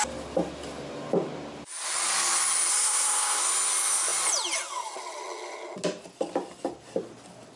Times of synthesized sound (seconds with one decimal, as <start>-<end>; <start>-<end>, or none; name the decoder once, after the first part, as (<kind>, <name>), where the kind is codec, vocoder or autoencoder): 2.7-3.4 (codec, SNAC)